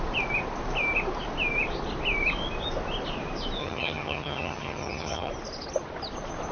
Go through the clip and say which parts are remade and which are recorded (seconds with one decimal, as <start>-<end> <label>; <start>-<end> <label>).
0.0-3.6 recorded; 3.6-5.3 remade; 5.3-6.5 recorded